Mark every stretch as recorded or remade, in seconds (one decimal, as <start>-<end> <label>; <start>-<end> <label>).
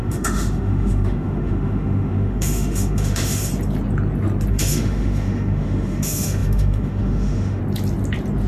0.0-3.5 remade; 3.5-4.5 recorded; 4.5-7.6 remade; 7.6-8.5 recorded